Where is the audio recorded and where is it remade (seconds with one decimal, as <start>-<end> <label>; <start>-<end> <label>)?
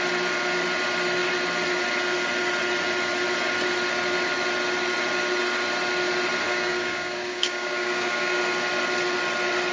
0.0-6.5 recorded; 6.5-8.4 remade; 8.4-9.7 recorded